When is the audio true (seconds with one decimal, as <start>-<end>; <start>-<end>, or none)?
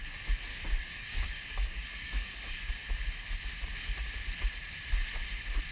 0.0-0.5; 2.7-5.7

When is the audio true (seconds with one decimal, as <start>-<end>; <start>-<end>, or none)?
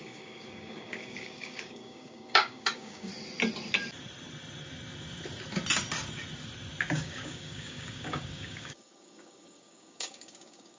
3.1-6.8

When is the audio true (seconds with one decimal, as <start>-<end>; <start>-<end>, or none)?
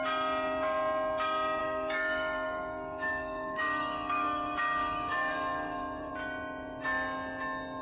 0.0-1.6; 6.1-7.8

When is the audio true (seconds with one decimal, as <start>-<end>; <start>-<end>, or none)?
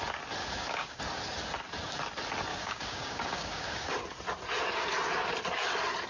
0.0-0.4; 1.0-2.5; 3.9-6.1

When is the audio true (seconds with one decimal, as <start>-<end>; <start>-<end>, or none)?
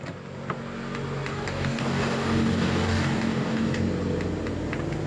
0.0-1.3; 3.8-5.1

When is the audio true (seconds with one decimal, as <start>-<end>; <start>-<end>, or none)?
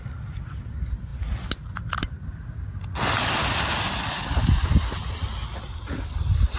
0.0-6.6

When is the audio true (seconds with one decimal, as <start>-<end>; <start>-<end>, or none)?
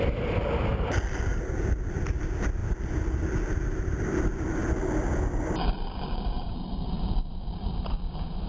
0.0-8.5